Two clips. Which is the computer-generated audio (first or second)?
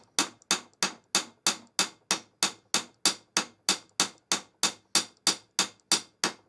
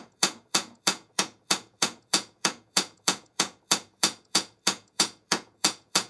second